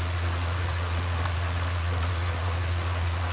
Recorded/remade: remade